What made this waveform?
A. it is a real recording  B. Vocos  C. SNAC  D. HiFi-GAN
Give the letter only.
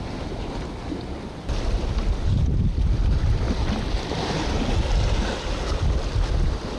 A